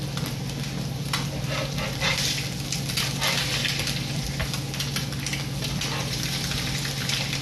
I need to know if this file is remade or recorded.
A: recorded